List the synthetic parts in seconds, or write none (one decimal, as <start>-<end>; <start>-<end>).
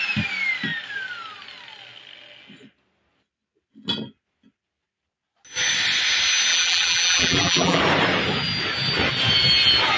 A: 6.5-7.8